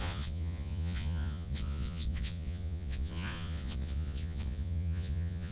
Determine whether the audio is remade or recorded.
remade